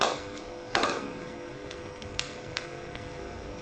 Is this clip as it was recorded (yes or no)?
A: no